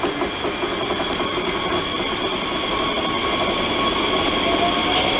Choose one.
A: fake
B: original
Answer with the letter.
B